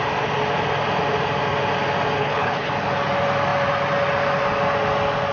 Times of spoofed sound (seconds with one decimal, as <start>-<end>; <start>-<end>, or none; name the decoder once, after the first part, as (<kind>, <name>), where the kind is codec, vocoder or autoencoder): 2.2-2.7 (codec, HILCodec)